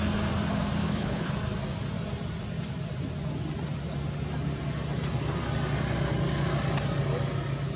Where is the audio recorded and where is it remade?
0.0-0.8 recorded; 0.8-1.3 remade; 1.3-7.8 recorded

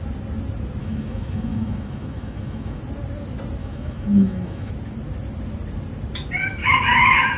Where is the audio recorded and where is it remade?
0.0-0.8 recorded; 0.8-2.8 remade; 2.8-3.6 recorded; 3.6-4.7 remade; 4.7-6.6 recorded; 6.6-7.4 remade

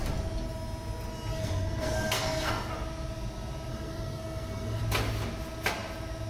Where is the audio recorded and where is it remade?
0.0-1.3 recorded; 1.3-2.7 remade; 2.7-3.7 recorded; 3.7-4.8 remade; 4.8-6.3 recorded

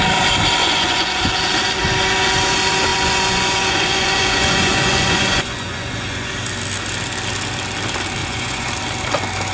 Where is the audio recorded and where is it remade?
0.0-0.6 recorded; 0.6-1.3 remade; 1.3-2.9 recorded; 2.9-6.3 remade; 6.3-8.2 recorded; 8.2-8.7 remade; 8.7-9.5 recorded

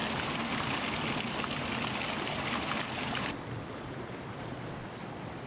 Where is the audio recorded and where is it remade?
0.0-5.5 recorded